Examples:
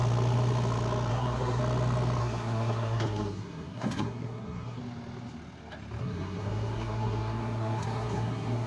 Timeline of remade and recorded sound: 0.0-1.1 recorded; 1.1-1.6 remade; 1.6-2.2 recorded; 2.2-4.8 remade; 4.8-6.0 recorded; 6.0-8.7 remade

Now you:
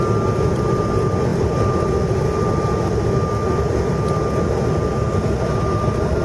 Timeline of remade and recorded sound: 0.0-6.2 recorded

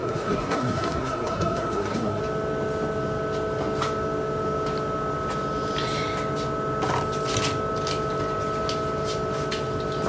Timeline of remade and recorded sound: 0.0-2.2 remade; 2.2-10.1 recorded

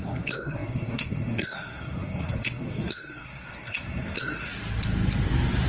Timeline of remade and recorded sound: 0.0-4.5 remade; 4.5-5.7 recorded

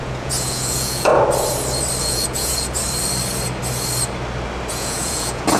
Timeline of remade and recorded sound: 0.0-1.1 remade; 1.1-2.0 recorded; 2.0-2.8 remade; 2.8-4.7 recorded; 4.7-5.6 remade

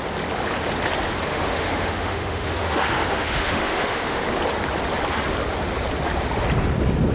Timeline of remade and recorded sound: 0.0-1.3 recorded; 1.3-4.2 remade; 4.2-7.1 recorded

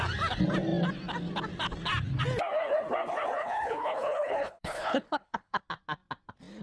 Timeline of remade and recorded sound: 0.0-3.4 recorded; 3.4-5.6 remade; 5.6-6.6 recorded

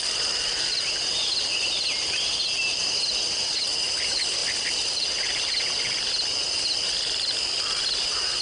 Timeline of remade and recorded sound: 0.0-8.4 recorded